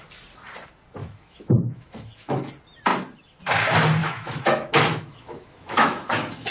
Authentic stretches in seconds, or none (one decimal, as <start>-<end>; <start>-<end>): 0.0-1.0; 2.5-4.0